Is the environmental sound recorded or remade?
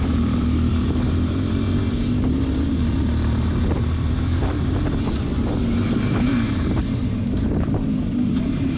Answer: remade